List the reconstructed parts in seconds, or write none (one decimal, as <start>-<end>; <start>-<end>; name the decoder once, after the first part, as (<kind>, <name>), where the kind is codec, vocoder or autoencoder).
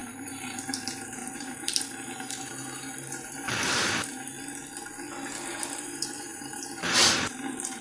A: 0.0-4.3 (vocoder, BigVGAN v2); 5.5-7.8